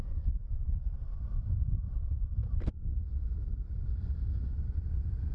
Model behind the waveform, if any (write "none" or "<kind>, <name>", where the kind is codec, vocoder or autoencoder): none